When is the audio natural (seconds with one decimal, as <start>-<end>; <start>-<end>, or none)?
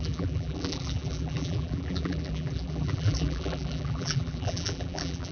none